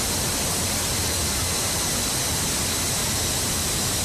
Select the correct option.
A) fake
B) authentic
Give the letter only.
B